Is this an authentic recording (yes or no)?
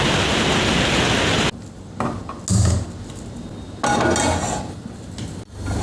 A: yes